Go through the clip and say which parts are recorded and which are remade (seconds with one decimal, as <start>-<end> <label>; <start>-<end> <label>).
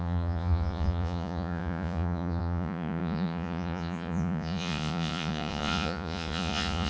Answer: 0.0-6.9 remade